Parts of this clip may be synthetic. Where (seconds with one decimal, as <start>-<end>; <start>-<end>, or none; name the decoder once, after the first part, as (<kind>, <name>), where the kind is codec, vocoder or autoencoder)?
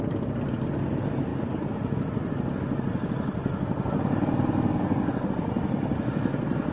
none